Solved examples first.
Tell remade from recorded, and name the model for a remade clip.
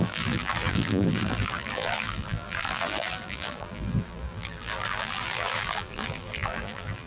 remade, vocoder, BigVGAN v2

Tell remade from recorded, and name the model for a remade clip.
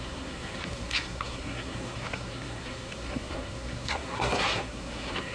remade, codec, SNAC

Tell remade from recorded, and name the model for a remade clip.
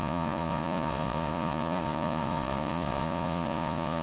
remade, vocoder, Vocos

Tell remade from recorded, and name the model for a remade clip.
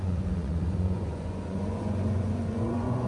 remade, vocoder, Vocos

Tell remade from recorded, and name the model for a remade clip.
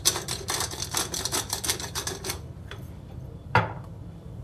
remade, vocoder, BigVGAN v2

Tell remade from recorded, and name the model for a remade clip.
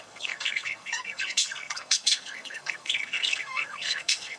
remade, codec, SNAC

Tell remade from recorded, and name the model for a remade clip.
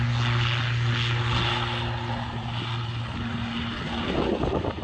recorded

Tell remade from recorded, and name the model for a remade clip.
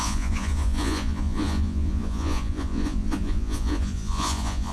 remade, vocoder, Vocos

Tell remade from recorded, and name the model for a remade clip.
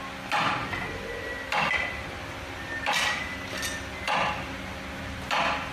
recorded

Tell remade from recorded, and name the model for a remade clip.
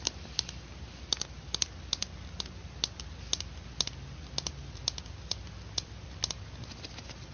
recorded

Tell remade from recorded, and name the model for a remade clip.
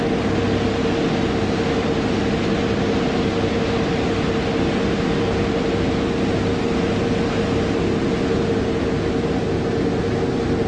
recorded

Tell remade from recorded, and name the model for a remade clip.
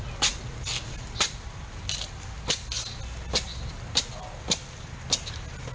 recorded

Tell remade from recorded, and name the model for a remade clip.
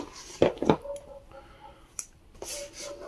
recorded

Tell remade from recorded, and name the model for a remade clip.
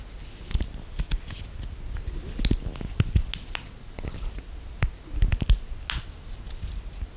recorded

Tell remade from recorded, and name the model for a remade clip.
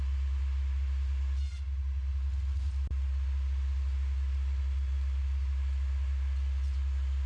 recorded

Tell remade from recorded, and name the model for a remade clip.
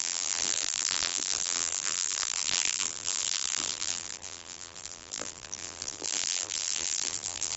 remade, vocoder, BigVGAN v2